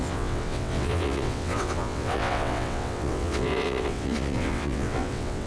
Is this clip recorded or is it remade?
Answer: remade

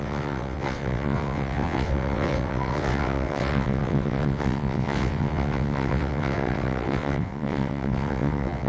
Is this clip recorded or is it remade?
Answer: remade